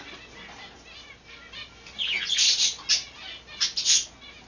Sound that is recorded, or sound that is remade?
recorded